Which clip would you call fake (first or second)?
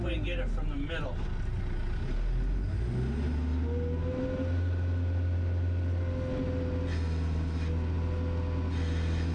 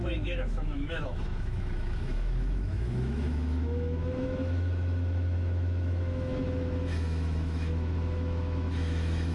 second